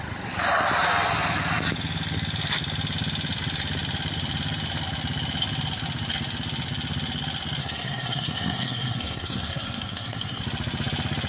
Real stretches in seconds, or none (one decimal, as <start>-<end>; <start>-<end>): 0.0-7.6; 10.4-11.3

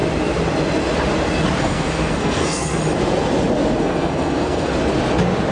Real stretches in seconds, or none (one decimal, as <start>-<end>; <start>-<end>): 0.0-1.6; 2.8-3.8; 4.7-5.5

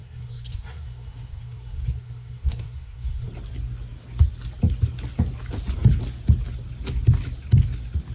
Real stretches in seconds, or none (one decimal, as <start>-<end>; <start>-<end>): 3.3-8.1

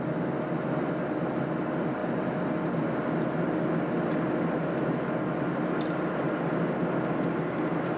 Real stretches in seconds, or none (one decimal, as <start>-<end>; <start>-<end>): 0.0-8.0

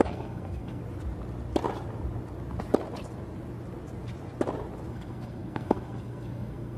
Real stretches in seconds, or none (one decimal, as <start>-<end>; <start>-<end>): 0.8-4.9

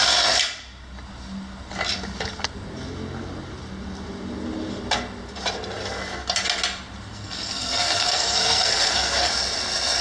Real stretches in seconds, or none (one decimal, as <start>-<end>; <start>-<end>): 0.0-7.1; 9.3-10.0